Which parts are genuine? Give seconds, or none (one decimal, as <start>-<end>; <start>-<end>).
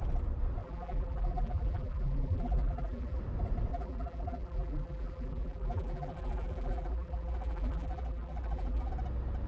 0.0-0.6; 3.2-3.7; 8.9-9.5